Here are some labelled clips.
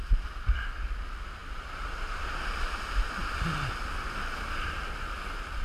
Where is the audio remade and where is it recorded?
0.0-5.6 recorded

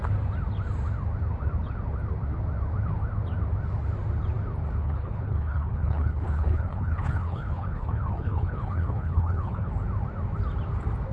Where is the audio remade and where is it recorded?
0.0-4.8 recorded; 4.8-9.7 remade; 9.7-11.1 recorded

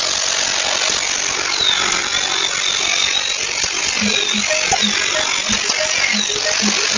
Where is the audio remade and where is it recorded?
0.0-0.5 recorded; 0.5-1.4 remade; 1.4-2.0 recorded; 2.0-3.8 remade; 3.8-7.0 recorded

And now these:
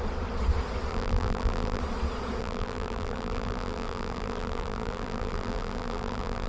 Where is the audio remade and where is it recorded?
0.0-0.9 recorded; 0.9-1.8 remade; 1.8-2.4 recorded; 2.4-6.5 remade